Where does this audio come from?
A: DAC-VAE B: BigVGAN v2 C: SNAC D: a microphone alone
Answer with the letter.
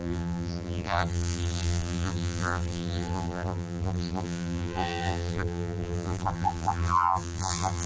B